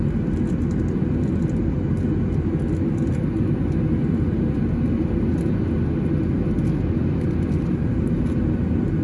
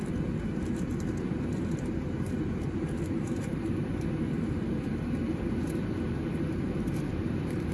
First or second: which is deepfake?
second